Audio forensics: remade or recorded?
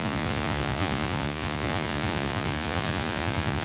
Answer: remade